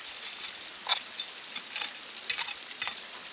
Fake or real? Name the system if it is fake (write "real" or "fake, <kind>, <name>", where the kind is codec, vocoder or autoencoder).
real